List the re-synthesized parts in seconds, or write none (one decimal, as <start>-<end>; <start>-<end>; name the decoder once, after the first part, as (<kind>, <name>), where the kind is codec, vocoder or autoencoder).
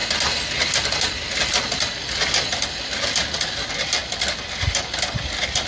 none